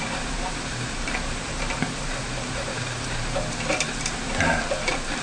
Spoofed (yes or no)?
yes